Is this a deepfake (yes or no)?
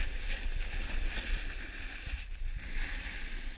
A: no